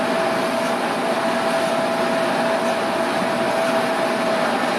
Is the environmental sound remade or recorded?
recorded